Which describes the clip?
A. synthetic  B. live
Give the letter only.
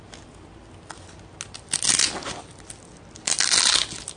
B